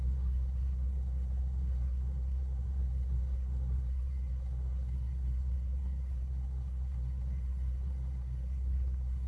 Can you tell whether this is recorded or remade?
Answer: remade